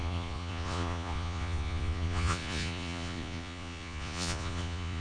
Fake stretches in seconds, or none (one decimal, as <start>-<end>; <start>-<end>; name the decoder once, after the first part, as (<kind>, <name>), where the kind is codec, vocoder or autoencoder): 0.0-5.0 (vocoder, Vocos)